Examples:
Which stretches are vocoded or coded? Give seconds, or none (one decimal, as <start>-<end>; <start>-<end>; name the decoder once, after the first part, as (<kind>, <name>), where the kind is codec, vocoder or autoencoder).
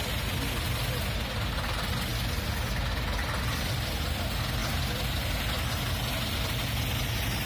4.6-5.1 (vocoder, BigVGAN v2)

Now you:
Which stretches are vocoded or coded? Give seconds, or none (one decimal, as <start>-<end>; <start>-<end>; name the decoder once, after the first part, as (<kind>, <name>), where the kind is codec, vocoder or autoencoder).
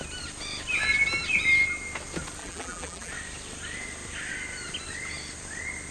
2.4-3.1 (vocoder, BigVGAN v2)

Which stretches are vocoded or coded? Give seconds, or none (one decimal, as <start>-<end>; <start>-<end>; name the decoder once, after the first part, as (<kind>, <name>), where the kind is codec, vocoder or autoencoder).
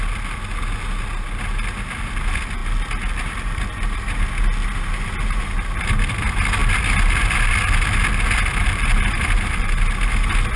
8.6-9.9 (vocoder, BigVGAN v2)